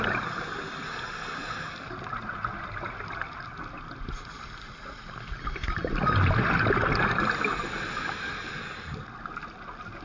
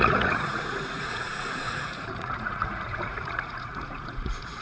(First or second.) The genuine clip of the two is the first